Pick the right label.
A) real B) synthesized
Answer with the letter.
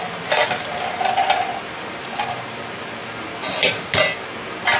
A